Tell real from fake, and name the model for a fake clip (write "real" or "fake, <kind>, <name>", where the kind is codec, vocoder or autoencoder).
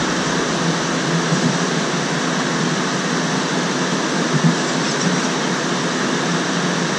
real